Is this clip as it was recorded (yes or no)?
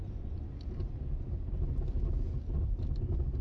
yes